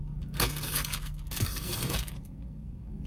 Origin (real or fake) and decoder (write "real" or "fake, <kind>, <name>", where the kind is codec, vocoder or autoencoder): fake, codec, SNAC